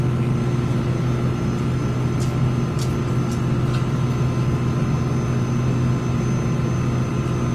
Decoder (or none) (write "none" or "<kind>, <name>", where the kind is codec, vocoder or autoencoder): none